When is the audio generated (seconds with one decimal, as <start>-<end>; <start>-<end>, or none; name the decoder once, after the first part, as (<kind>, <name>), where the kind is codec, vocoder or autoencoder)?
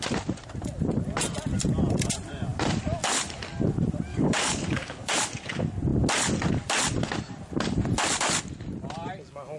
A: 4.1-5.1 (codec, DAC)